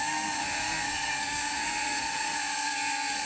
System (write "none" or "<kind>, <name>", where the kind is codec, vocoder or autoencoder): codec, SNAC